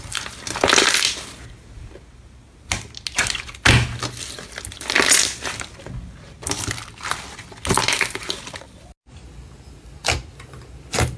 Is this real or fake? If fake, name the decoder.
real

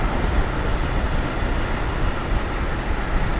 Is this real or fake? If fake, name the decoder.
real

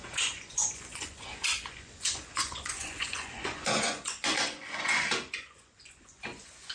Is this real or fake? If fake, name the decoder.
fake, vocoder, Vocos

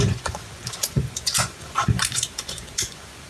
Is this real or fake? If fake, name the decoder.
fake, vocoder, Vocos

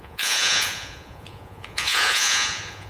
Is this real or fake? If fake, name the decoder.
fake, vocoder, Vocos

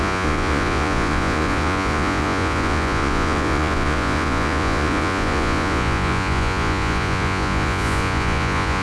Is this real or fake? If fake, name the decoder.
fake, vocoder, Vocos